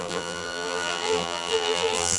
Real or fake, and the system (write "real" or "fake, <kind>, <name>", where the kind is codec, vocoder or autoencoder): fake, vocoder, BigVGAN v2